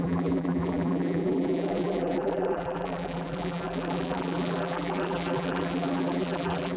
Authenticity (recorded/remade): remade